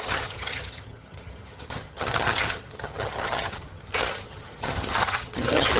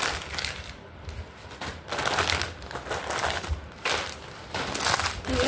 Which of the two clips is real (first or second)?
second